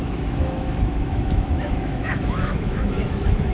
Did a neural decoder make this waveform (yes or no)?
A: yes